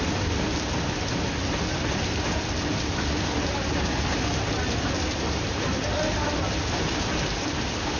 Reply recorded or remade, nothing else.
recorded